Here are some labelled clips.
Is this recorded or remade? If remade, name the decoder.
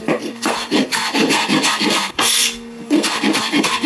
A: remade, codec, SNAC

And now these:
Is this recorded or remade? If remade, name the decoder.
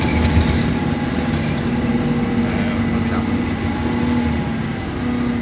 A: recorded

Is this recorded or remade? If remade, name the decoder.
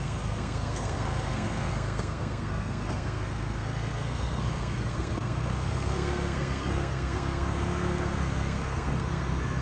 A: remade, codec, SNAC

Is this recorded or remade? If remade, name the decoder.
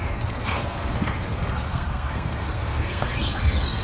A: remade, codec, SNAC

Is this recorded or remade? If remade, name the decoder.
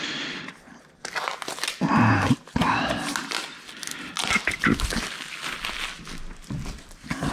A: recorded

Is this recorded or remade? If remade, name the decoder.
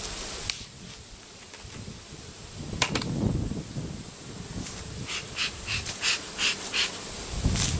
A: recorded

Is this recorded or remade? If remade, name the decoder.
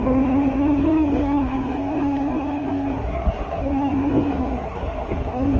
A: remade, codec, SNAC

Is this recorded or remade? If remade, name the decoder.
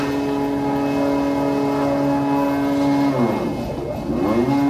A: recorded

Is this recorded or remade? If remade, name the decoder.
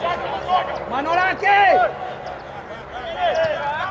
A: recorded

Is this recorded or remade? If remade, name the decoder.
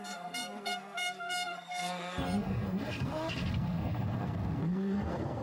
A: remade, codec, SNAC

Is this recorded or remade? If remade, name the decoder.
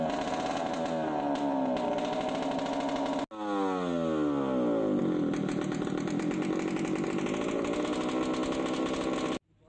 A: recorded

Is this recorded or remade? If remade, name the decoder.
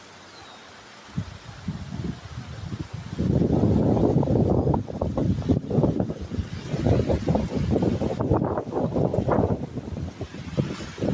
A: recorded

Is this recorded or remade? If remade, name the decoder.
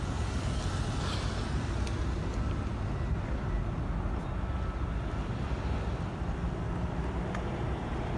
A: recorded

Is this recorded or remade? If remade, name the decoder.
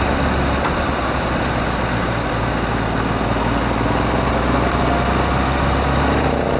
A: recorded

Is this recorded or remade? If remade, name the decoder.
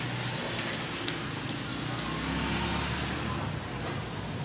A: recorded